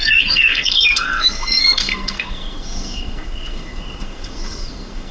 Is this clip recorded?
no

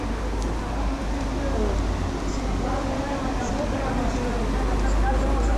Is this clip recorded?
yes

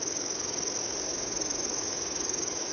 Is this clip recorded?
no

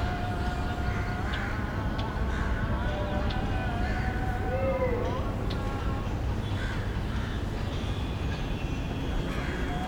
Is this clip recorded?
yes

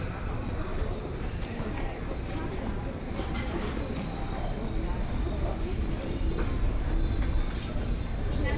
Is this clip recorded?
no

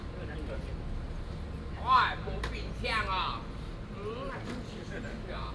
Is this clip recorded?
yes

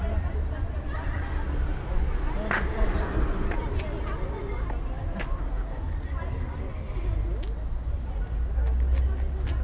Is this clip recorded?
yes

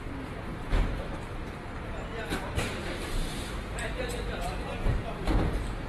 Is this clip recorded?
no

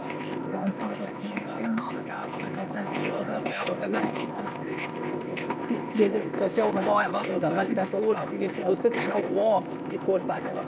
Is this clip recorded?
no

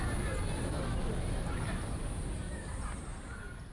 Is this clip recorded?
yes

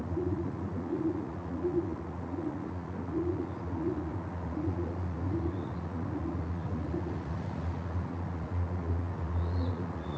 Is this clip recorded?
no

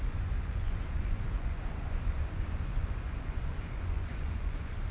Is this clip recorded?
no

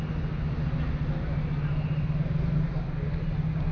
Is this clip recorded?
yes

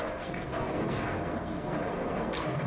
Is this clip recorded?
no